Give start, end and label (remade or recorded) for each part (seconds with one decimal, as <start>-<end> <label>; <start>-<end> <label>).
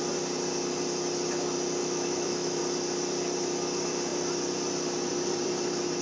0.0-1.8 recorded; 1.8-2.6 remade; 2.6-6.0 recorded